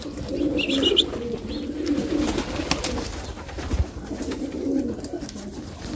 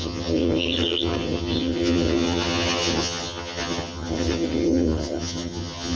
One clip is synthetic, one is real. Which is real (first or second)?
first